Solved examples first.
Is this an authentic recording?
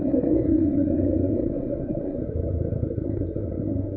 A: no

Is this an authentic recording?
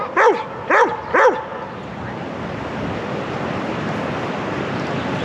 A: yes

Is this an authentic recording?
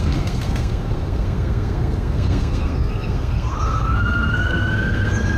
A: no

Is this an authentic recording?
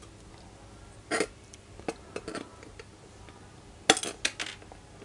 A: yes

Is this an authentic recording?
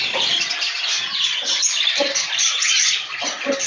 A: no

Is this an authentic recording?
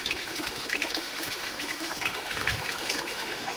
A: no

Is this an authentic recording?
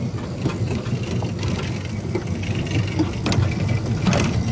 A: yes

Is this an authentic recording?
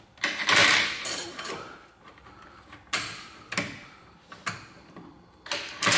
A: yes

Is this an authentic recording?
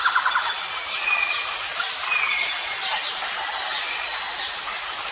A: yes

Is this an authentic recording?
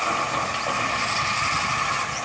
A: yes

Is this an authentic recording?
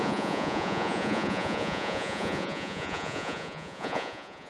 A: no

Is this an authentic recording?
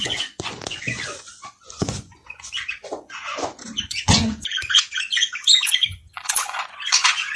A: no